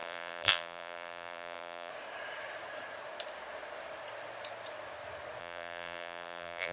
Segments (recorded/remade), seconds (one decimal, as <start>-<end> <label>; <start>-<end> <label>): 0.0-1.9 remade; 1.9-5.4 recorded; 5.4-6.7 remade